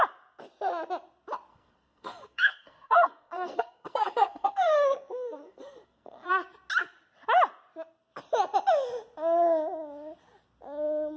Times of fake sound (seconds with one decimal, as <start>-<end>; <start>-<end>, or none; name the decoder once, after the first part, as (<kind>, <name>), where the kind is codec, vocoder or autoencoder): 1.5-6.3 (codec, SNAC)